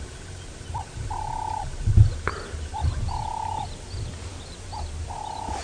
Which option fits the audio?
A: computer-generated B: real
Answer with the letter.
B